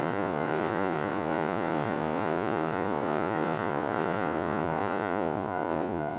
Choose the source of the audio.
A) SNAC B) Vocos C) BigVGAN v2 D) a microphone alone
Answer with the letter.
B